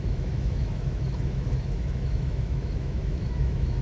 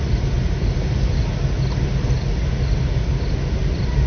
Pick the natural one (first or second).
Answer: second